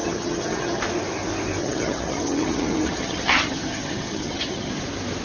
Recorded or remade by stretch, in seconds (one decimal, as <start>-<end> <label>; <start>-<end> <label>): 0.0-0.8 remade; 0.8-1.6 recorded; 1.6-4.7 remade; 4.7-5.2 recorded